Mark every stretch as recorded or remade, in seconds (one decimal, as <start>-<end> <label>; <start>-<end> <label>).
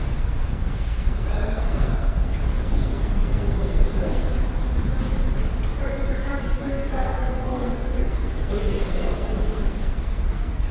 0.0-4.3 remade; 4.3-6.4 recorded; 6.4-10.7 remade